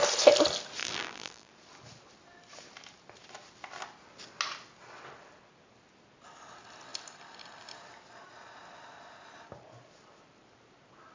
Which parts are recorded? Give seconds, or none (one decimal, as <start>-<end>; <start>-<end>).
0.0-0.8; 1.5-11.1